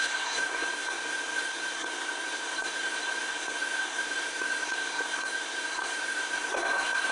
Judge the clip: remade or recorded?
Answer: remade